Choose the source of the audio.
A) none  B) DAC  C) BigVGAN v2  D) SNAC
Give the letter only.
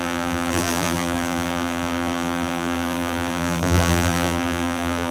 C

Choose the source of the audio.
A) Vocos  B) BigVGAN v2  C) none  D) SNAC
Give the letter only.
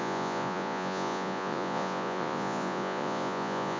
A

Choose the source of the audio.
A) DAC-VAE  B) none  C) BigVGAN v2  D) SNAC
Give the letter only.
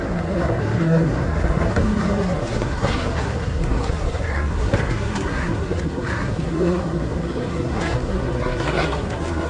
D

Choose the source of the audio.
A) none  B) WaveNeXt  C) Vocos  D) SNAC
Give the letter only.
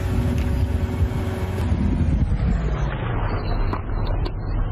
A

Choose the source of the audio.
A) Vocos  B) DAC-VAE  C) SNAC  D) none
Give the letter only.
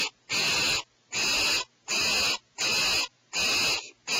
D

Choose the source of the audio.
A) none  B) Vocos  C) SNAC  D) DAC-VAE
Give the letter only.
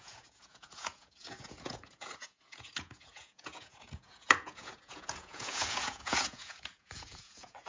B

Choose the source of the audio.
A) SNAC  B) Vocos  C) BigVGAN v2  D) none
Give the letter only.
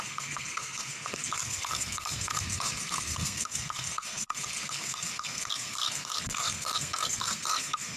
A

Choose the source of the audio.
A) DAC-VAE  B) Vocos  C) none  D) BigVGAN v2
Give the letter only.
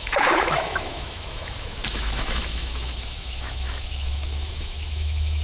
A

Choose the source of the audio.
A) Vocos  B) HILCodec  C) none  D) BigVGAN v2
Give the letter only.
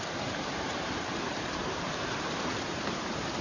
D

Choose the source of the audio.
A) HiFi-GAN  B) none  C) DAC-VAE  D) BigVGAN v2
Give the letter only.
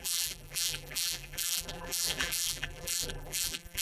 D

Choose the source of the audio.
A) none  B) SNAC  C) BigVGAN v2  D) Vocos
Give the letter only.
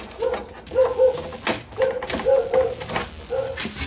A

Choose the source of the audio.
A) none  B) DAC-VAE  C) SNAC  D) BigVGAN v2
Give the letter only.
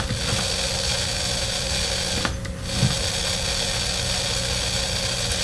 A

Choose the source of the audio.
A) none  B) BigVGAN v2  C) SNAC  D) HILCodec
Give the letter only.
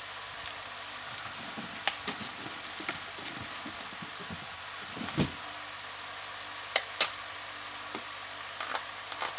A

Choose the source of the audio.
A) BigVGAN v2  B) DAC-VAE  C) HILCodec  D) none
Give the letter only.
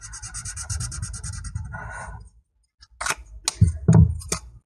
D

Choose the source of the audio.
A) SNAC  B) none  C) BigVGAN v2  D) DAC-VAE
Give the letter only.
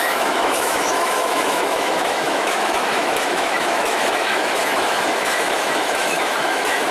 D